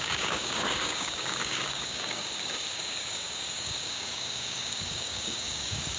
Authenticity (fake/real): fake